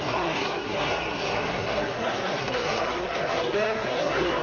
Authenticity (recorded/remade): remade